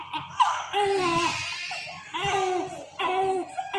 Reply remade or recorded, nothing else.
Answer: recorded